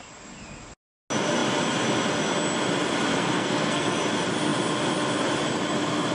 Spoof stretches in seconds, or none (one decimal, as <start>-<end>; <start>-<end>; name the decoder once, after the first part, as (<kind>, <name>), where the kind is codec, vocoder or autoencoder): 3.1-4.0 (codec, SNAC)